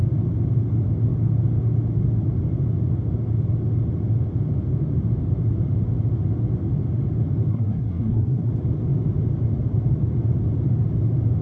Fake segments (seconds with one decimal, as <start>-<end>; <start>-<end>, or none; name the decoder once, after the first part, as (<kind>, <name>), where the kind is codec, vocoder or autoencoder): 7.5-8.5 (codec, SNAC)